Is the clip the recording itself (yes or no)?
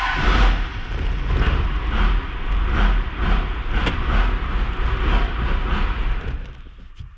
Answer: yes